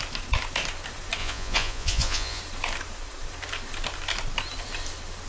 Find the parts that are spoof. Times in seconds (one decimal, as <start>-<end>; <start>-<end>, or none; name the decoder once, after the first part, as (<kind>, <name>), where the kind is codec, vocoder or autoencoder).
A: 1.2-2.4 (vocoder, Vocos)